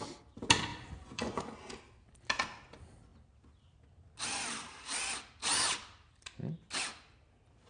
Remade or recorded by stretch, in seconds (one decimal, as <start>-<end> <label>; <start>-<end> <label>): 0.0-0.7 recorded; 0.7-1.4 remade; 1.4-7.7 recorded